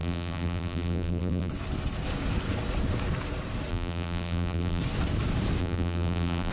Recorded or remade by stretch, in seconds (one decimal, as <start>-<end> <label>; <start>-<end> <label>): 0.0-1.5 remade; 1.5-3.7 recorded; 3.7-4.8 remade; 4.8-5.6 recorded; 5.6-6.5 remade